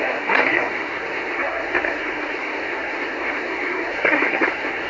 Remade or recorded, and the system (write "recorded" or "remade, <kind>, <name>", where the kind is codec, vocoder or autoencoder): remade, codec, SNAC